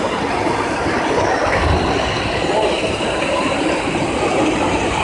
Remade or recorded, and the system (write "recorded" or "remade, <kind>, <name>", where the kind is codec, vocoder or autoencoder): recorded